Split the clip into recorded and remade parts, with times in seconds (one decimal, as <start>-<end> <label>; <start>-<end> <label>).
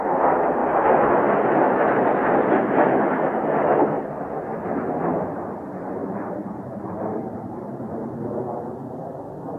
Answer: 0.0-6.0 recorded; 6.0-7.9 remade; 7.9-9.6 recorded